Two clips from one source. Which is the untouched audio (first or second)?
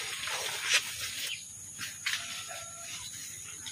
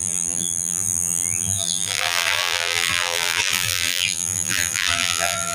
first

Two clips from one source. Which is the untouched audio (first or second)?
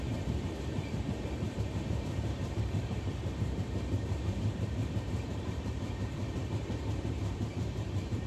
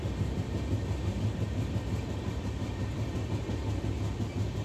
second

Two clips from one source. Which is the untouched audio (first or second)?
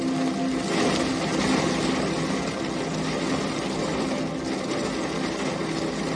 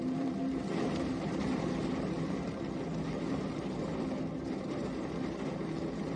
first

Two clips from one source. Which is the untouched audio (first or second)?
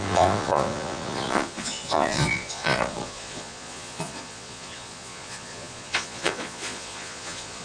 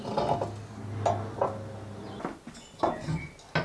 second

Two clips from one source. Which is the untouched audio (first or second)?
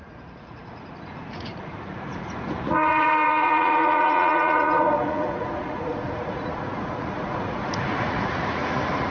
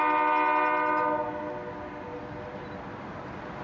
second